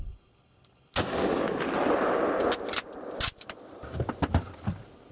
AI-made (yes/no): no